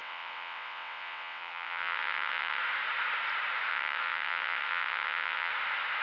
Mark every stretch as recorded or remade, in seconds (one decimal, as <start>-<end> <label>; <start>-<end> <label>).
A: 0.0-2.6 remade; 2.6-3.7 recorded; 3.7-5.5 remade; 5.5-6.0 recorded